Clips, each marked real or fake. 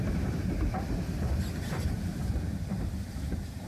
fake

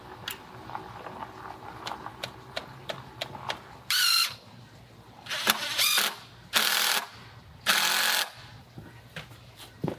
real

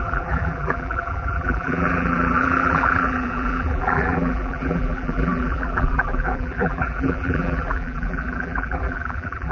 fake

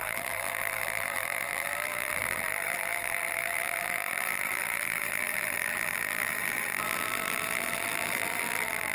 fake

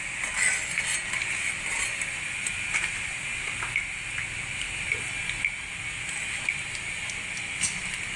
real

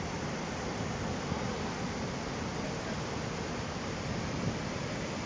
real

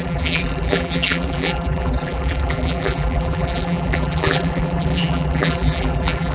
fake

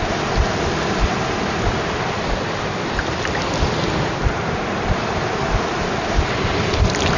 real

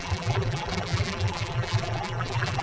fake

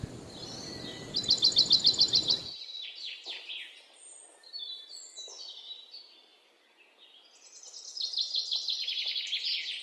real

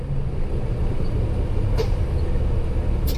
real